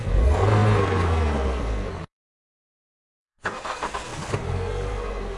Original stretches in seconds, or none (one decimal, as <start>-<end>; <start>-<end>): none